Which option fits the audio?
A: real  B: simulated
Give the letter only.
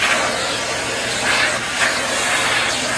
A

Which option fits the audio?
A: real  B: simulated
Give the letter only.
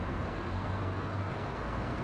B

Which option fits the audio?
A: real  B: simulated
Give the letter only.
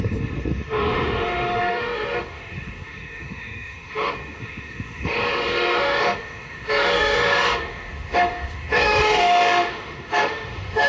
B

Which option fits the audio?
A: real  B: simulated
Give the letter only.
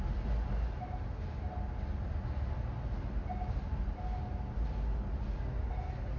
A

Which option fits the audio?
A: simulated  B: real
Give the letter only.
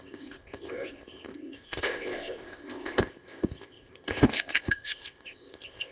A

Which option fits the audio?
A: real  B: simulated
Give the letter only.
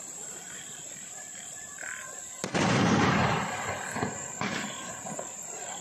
B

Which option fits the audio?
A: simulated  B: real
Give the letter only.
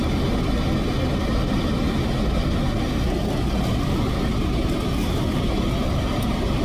B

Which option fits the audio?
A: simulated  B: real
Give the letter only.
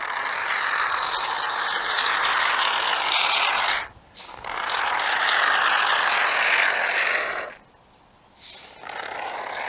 B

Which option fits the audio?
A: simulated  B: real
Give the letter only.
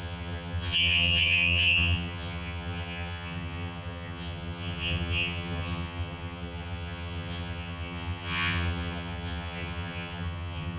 A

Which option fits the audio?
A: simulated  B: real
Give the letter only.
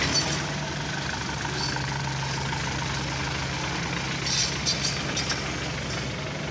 B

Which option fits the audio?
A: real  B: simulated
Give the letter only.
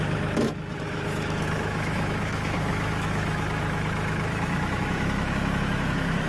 B